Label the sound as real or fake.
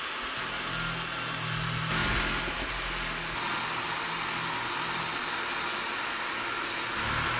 real